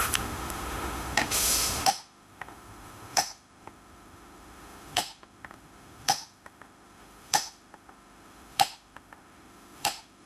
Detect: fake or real fake